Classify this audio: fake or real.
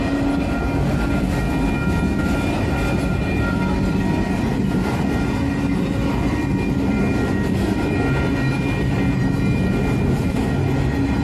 real